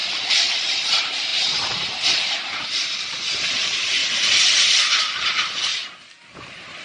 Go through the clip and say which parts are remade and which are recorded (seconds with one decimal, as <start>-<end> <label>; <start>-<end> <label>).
0.0-0.6 recorded; 0.6-4.0 remade; 4.0-5.0 recorded; 5.0-5.7 remade; 5.7-6.8 recorded